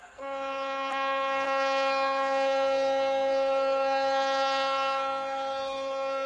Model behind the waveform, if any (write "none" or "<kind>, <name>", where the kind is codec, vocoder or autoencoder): codec, SNAC